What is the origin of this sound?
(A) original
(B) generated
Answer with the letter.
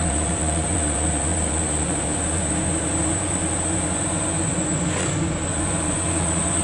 B